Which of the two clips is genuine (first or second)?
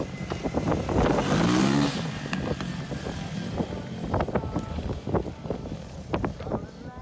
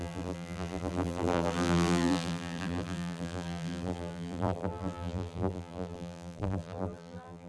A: first